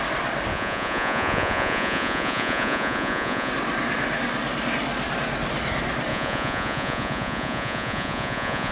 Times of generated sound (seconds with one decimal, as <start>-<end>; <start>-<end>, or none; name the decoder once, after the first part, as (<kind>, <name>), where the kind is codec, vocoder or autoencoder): 0.5-3.5 (vocoder, Vocos); 6.1-8.7

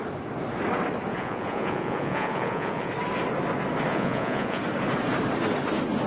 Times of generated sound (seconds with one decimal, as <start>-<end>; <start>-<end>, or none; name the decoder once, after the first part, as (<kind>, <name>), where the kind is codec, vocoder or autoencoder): 1.1-2.9 (vocoder, Vocos); 3.9-4.6

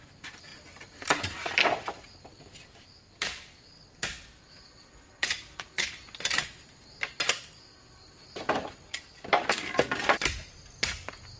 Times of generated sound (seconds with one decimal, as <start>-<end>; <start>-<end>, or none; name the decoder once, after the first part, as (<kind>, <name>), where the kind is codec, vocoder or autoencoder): none